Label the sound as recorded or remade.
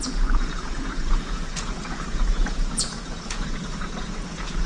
remade